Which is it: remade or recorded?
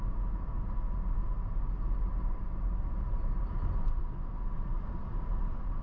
recorded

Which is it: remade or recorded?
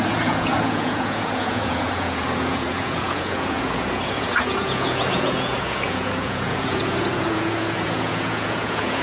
remade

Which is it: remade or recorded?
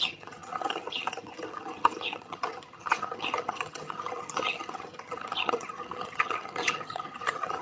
remade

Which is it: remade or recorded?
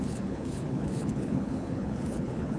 remade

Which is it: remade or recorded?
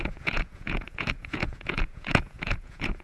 remade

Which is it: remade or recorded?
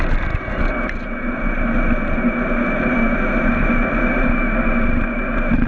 recorded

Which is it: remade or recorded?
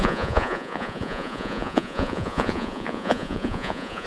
remade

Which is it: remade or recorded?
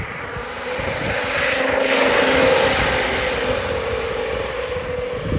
recorded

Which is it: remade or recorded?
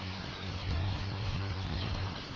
remade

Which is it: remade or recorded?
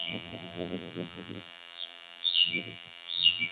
remade